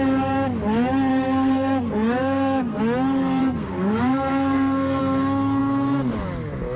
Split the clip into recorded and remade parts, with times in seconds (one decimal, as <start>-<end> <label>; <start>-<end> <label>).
0.0-1.1 recorded; 1.1-2.8 remade; 2.8-3.4 recorded; 3.4-5.0 remade; 5.0-6.8 recorded